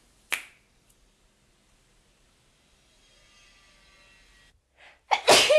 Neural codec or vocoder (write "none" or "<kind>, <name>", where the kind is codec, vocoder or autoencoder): none